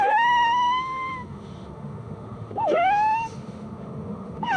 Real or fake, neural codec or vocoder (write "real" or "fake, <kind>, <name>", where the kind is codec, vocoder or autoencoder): fake, autoencoder, DAC-VAE